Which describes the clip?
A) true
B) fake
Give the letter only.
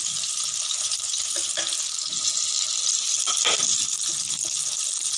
A